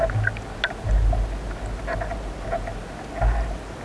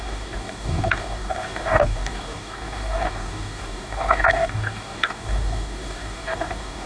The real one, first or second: first